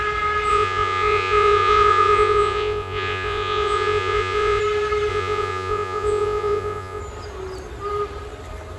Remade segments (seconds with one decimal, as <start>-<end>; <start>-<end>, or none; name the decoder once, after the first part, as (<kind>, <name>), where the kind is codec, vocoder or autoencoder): 0.5-4.6 (vocoder, Vocos); 5.1-7.0